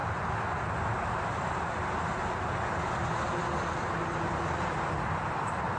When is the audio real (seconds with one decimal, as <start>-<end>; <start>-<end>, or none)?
0.0-5.8